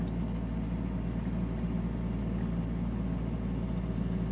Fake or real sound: real